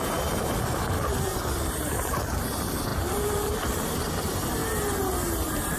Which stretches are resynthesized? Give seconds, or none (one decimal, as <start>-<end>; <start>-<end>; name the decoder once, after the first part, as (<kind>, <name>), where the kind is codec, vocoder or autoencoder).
0.0-4.6 (vocoder, BigVGAN v2); 5.3-5.8